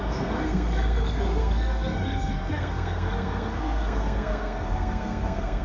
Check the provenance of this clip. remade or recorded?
remade